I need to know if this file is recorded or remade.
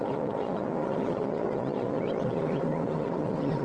remade